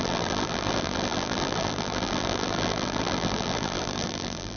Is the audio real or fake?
fake